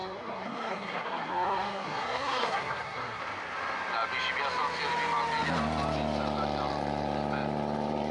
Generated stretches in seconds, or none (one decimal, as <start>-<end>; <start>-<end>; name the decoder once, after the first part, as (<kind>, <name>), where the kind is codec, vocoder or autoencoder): 0.0-3.2 (codec, SNAC)